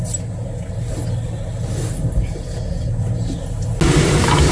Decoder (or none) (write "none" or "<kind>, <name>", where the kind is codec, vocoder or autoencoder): none